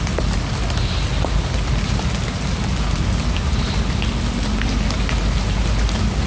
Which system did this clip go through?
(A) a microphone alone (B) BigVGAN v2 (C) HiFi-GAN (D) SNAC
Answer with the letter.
A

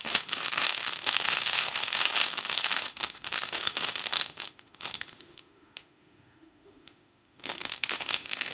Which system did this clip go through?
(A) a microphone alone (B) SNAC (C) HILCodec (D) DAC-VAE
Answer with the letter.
D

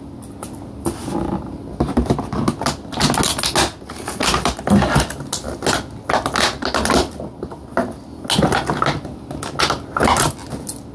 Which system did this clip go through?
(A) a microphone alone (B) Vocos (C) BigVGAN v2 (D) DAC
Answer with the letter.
A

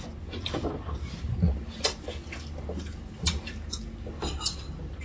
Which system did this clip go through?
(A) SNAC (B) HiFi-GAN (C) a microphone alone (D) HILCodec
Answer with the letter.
C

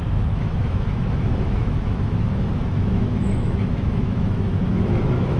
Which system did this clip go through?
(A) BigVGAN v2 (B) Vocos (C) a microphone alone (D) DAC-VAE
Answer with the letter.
D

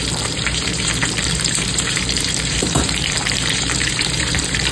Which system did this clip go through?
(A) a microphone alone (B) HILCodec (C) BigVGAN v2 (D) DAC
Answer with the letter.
C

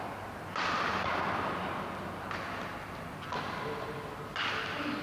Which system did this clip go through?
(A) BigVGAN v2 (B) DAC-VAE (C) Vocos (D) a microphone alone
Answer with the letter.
D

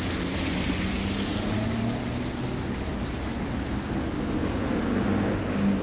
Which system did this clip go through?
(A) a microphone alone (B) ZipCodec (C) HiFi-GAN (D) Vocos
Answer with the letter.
A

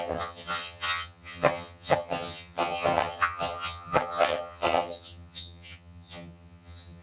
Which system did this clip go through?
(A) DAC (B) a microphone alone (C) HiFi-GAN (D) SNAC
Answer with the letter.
C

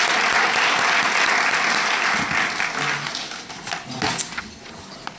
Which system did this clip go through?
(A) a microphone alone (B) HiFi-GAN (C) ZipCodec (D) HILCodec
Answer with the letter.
A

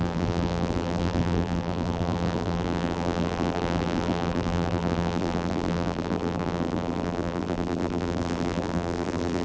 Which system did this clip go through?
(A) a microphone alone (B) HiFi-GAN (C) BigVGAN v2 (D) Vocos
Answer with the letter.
C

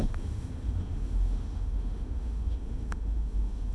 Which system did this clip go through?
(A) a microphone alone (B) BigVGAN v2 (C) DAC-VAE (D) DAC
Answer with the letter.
C